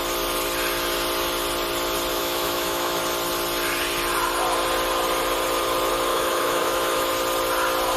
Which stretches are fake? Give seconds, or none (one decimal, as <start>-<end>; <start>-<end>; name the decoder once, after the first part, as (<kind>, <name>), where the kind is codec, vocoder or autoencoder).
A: 2.1-3.0 (autoencoder, DAC-VAE); 6.1-7.1

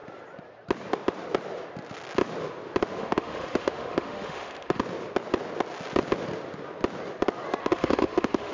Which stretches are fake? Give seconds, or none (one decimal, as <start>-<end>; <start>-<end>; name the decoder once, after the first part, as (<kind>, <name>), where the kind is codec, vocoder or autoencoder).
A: 3.0-4.8 (autoencoder, DAC-VAE); 7.6-8.5

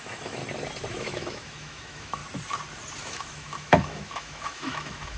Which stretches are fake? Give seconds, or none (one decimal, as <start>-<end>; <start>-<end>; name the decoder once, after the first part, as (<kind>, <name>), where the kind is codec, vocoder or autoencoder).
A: 0.0-0.4 (autoencoder, DAC-VAE); 0.9-2.2; 3.0-5.2

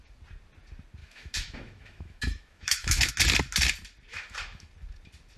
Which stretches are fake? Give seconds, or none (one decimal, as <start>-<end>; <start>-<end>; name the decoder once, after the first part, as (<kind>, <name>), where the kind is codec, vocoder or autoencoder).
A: 1.0-3.1 (autoencoder, DAC-VAE); 4.1-4.7

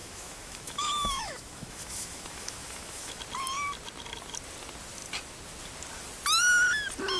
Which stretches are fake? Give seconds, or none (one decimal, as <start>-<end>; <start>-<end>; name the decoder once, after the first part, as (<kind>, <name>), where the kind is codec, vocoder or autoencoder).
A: 0.0-3.2 (autoencoder, DAC-VAE)

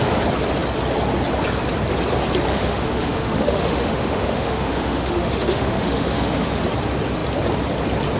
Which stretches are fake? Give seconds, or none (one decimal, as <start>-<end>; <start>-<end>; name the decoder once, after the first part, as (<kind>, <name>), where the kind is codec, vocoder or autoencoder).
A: 2.5-6.6 (autoencoder, DAC-VAE)

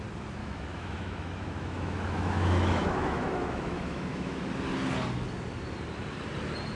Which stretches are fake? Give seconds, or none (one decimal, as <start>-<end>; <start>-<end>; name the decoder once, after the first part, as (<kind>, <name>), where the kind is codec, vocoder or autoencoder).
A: 0.4-4.5 (autoencoder, DAC-VAE)

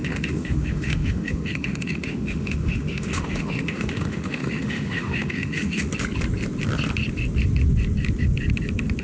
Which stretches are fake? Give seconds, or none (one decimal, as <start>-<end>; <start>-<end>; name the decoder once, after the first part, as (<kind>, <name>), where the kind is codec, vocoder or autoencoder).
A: 0.0-5.9 (autoencoder, DAC-VAE)